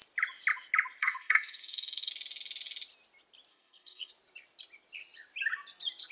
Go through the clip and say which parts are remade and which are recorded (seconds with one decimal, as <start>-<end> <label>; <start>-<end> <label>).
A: 0.0-1.0 recorded; 1.0-2.1 remade; 2.1-3.5 recorded; 3.5-4.1 remade; 4.1-6.1 recorded